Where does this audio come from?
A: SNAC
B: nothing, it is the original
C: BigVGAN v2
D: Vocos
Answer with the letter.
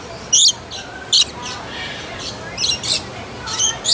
B